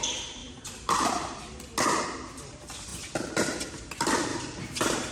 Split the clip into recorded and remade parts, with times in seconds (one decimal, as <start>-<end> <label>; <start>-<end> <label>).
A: 0.0-0.4 recorded; 0.4-1.4 remade; 1.4-4.3 recorded; 4.3-5.1 remade